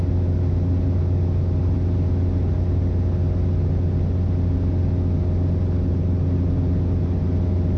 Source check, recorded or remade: recorded